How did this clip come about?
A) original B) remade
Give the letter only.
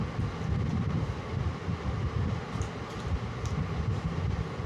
A